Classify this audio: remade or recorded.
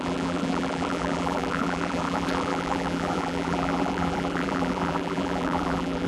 remade